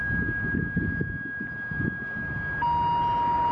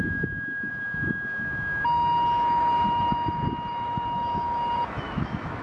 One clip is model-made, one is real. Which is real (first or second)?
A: first